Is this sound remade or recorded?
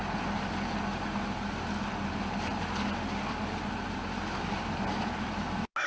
recorded